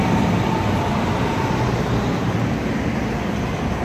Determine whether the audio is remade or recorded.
recorded